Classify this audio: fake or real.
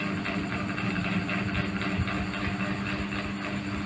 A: real